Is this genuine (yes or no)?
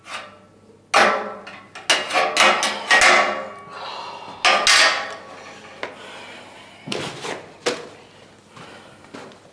yes